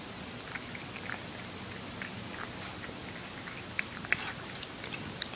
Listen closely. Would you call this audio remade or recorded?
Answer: recorded